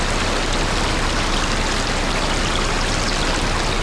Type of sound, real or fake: real